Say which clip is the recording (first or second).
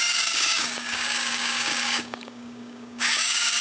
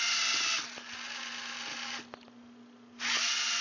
second